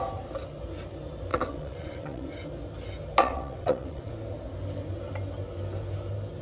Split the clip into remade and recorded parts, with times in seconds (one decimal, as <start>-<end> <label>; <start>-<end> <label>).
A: 0.0-1.3 recorded; 1.3-2.3 remade; 2.3-3.2 recorded; 3.2-4.1 remade; 4.1-6.4 recorded